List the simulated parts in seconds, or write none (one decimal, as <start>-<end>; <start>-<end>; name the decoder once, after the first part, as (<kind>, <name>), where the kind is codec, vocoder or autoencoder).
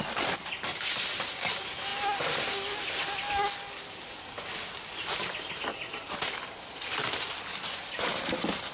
none